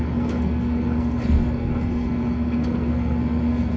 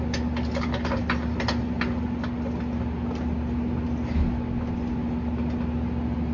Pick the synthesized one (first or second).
first